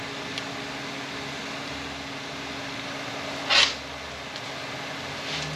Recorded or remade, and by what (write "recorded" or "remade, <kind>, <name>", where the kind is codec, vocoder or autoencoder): recorded